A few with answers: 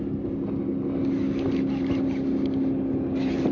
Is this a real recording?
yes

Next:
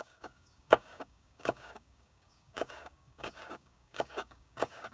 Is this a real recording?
no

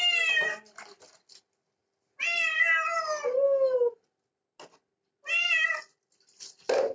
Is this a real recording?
yes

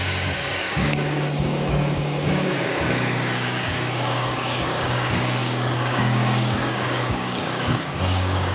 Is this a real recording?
no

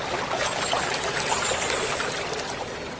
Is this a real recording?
yes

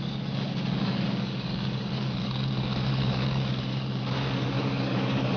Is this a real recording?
no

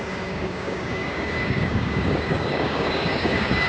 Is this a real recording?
no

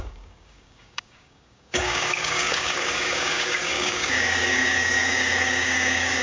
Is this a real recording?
no